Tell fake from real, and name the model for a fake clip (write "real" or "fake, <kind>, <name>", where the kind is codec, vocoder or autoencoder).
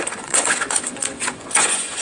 fake, vocoder, Vocos